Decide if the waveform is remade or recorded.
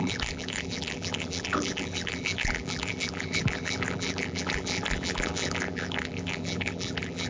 remade